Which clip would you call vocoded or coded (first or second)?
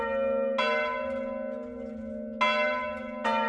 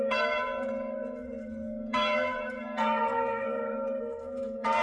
second